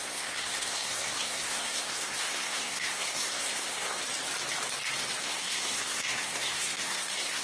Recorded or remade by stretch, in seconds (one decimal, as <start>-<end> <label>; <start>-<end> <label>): 0.0-4.0 remade; 4.0-5.2 recorded; 5.2-7.4 remade